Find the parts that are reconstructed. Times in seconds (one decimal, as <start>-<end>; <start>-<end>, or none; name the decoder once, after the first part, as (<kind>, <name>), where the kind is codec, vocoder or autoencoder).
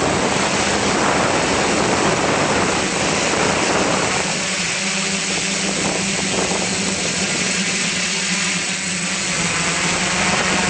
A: 4.3-4.8 (vocoder, Vocos); 7.0-8.8